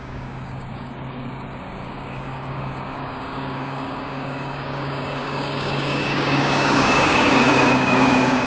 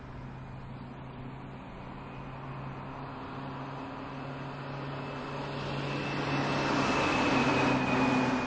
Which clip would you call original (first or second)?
second